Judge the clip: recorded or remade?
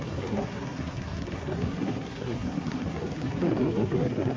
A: remade